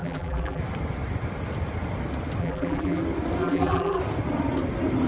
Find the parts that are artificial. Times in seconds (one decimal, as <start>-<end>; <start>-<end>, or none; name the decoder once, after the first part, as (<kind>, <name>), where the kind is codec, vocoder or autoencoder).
0.0-0.6 (vocoder, BigVGAN v2); 2.4-3.0; 3.4-4.0